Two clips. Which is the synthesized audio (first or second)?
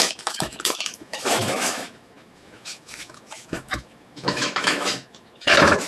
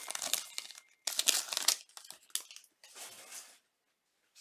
first